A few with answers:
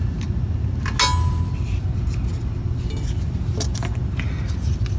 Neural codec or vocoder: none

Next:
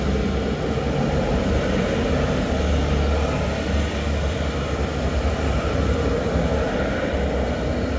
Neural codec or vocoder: none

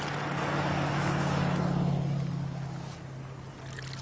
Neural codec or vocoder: none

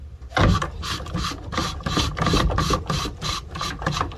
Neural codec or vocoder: none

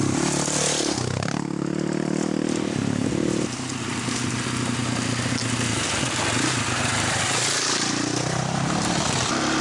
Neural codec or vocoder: none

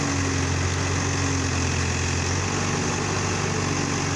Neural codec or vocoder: none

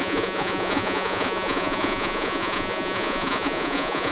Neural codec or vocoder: vocoder, Vocos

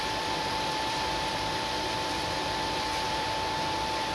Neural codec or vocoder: vocoder, BigVGAN v2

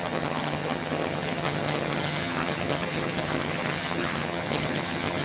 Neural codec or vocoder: vocoder, HiFi-GAN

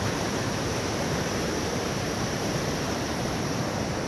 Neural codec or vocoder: vocoder, BigVGAN v2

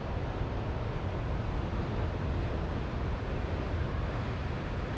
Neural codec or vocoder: none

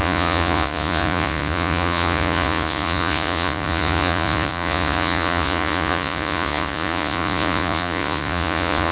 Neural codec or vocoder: vocoder, Vocos